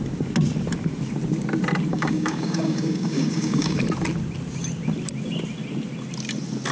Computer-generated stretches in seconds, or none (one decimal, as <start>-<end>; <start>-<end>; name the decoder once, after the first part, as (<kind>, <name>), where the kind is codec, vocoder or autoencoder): 1.9-3.8 (codec, DAC)